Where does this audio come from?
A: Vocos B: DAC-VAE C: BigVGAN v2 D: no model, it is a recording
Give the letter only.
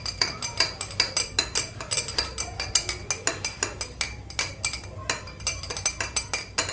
D